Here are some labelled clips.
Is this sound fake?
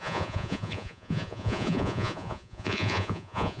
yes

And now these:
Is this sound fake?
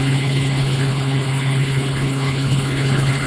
yes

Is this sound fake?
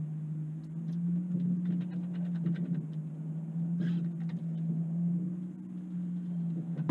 no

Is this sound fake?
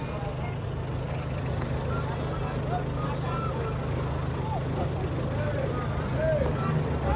no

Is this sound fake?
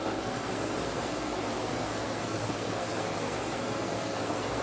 yes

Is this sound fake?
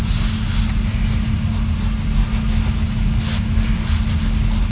no